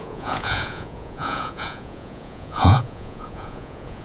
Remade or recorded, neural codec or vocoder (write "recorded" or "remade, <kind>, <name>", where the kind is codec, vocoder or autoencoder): remade, vocoder, Vocos